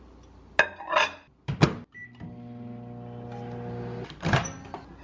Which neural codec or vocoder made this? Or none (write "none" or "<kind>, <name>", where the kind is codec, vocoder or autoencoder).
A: none